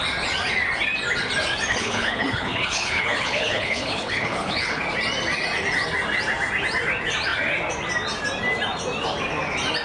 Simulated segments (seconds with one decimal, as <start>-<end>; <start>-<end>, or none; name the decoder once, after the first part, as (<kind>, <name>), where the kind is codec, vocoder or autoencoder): 1.7-4.8 (codec, HILCodec)